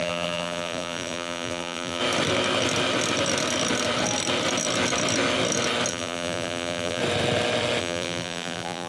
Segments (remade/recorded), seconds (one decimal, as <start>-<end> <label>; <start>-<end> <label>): 0.0-2.0 remade; 2.0-5.9 recorded; 5.9-7.0 remade; 7.0-7.8 recorded; 7.8-8.9 remade